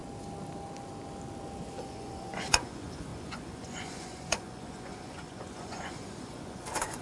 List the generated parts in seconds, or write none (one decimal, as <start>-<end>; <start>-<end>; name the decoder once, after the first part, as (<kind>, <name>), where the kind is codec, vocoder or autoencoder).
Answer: 1.8-7.0 (vocoder, Vocos)